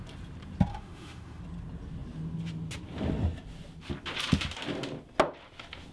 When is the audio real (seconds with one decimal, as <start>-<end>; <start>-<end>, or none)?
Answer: 0.0-0.7; 1.4-5.9